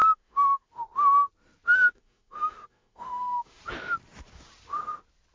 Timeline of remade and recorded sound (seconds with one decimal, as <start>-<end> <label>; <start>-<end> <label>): 0.0-0.7 remade; 0.7-1.7 recorded; 1.7-3.6 remade; 3.6-5.3 recorded